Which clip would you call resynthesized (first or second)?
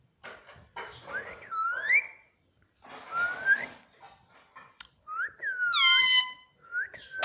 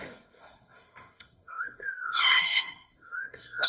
second